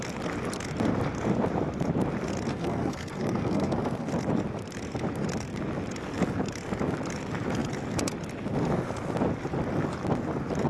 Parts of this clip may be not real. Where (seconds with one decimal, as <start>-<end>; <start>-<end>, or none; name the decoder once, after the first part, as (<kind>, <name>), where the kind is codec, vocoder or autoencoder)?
2.5-4.1 (codec, SNAC)